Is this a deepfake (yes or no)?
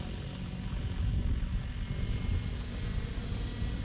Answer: no